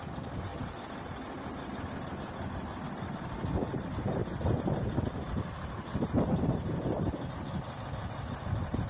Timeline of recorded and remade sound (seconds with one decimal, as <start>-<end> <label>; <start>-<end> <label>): 0.0-8.9 recorded